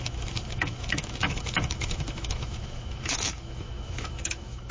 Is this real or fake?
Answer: fake